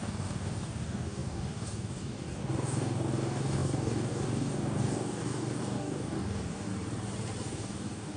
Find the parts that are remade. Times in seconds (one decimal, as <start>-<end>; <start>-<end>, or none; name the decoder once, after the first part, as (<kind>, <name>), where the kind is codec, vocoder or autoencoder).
0.0-6.7 (codec, DAC); 7.5-8.2